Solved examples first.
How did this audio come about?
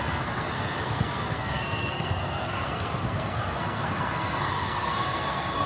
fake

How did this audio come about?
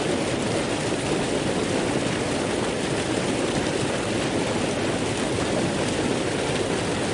real